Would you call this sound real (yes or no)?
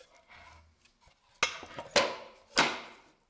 yes